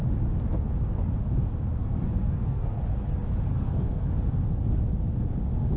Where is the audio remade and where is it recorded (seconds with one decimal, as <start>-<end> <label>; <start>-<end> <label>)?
0.0-1.8 recorded; 1.8-2.8 remade; 2.8-3.5 recorded; 3.5-4.1 remade; 4.1-5.8 recorded